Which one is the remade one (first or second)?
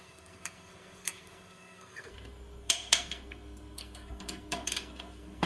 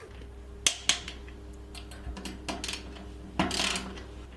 first